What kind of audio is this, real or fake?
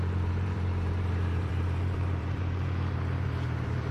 fake